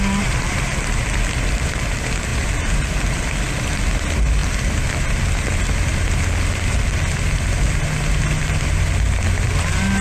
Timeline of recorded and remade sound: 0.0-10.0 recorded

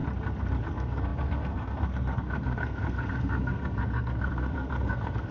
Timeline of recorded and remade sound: 0.0-0.7 recorded; 0.7-5.3 remade

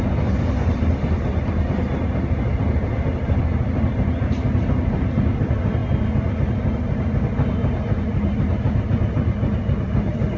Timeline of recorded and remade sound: 0.0-10.4 recorded